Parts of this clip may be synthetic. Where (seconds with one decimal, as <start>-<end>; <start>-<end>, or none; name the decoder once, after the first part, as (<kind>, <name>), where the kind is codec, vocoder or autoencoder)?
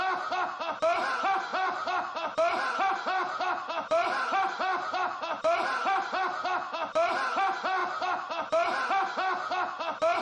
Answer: 1.5-6.2 (vocoder, BigVGAN v2); 7.8-8.9